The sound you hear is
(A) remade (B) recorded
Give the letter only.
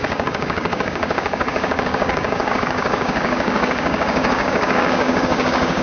A